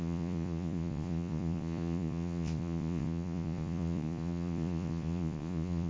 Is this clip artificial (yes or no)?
yes